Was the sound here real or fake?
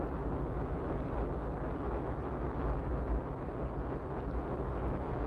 real